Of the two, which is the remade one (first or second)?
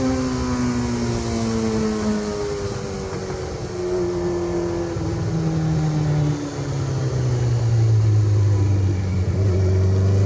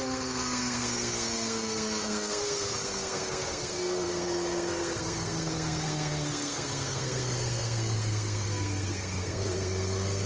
second